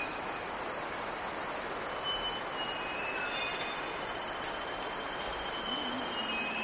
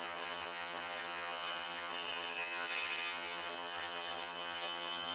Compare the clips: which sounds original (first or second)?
first